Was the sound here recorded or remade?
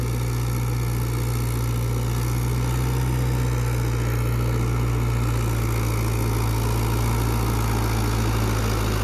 recorded